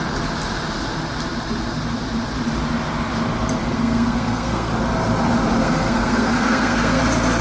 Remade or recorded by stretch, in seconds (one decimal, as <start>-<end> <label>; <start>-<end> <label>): 0.0-3.6 recorded; 3.6-4.7 remade; 4.7-5.6 recorded; 5.6-7.0 remade; 7.0-7.4 recorded